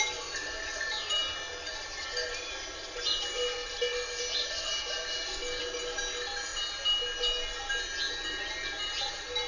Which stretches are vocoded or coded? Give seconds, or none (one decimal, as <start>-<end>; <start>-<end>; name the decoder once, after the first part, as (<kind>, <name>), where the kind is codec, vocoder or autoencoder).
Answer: none